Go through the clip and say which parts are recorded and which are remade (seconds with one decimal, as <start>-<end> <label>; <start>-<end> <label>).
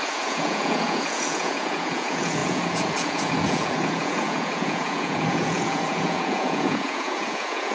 0.0-7.7 remade